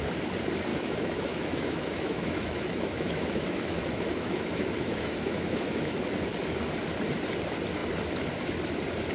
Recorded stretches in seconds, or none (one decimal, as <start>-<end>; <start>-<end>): 0.0-0.7; 6.0-9.1